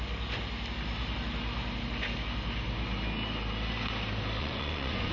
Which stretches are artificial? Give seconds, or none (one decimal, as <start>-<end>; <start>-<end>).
4.4-5.1